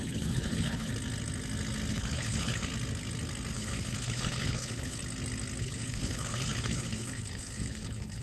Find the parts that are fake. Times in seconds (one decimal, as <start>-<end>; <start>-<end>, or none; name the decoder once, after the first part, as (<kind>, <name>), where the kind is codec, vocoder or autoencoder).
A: 0.0-0.9 (codec, HILCodec); 1.9-2.7; 3.5-5.0; 5.6-8.2